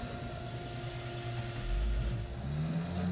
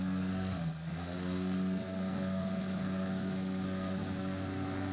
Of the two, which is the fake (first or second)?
second